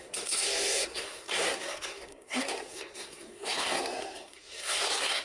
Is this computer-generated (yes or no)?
yes